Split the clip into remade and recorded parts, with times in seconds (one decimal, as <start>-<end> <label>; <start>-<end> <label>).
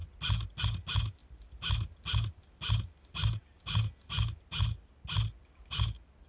0.0-6.3 recorded